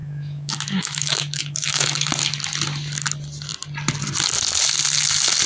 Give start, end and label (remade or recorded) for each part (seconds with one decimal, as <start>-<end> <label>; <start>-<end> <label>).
0.0-2.1 remade; 2.1-5.5 recorded